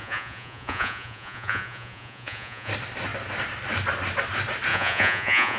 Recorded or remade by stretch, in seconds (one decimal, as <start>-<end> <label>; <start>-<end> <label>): 0.0-2.7 remade; 2.7-4.7 recorded; 4.7-5.6 remade